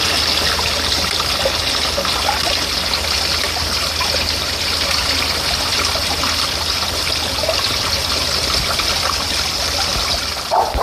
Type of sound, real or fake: real